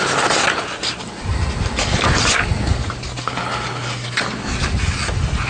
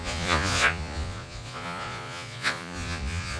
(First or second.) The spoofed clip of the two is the second